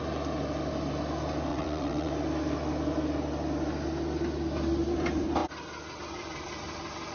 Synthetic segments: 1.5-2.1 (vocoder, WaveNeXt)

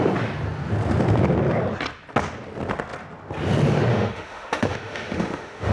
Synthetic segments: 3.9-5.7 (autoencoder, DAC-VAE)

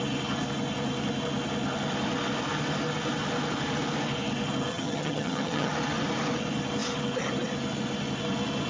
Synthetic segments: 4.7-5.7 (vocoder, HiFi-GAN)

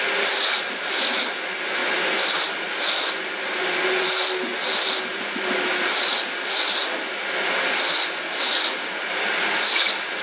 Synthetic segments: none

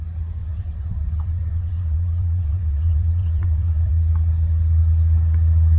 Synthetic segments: 0.4-3.9 (vocoder, WaveNeXt)

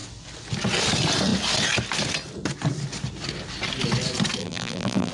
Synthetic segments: 4.4-5.1 (vocoder, BigVGAN v2)